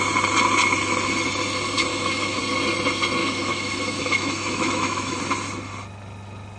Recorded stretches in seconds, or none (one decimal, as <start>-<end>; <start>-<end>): 0.0-1.9; 2.4-3.2; 5.2-6.6